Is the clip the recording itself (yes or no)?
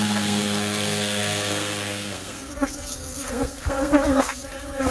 no